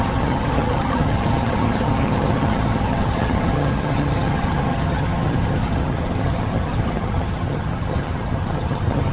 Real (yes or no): no